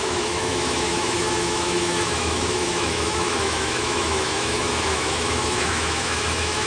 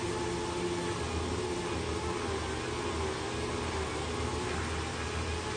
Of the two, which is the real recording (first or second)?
second